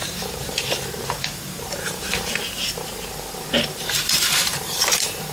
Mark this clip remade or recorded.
remade